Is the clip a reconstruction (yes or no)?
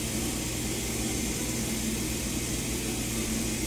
no